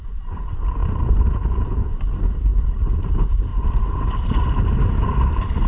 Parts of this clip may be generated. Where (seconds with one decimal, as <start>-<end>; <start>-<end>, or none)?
none